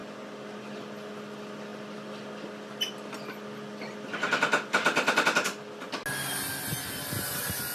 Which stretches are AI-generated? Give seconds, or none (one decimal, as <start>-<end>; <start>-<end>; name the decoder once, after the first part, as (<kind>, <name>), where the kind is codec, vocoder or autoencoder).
none